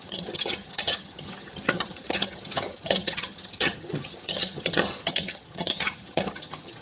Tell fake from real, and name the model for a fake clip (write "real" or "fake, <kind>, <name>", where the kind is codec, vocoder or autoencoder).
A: fake, vocoder, HiFi-GAN